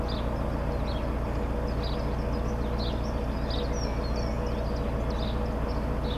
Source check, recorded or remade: recorded